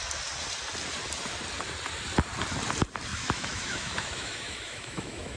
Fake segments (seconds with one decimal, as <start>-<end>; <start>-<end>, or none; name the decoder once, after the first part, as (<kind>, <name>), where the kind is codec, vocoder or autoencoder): 3.1-5.4 (autoencoder, DAC-VAE)